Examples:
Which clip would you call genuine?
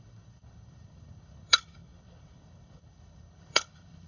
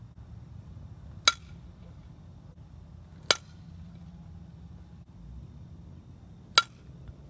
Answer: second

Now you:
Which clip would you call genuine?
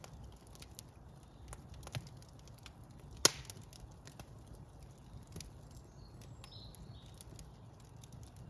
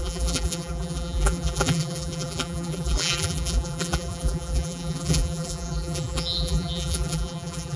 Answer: first